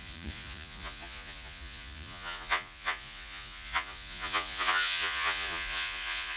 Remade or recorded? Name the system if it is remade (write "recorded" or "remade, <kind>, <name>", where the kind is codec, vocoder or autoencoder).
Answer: remade, vocoder, Vocos